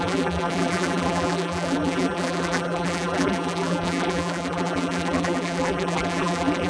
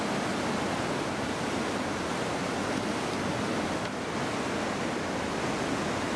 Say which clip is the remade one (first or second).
first